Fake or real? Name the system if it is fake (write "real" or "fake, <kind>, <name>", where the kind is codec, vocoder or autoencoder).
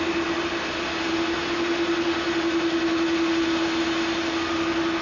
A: real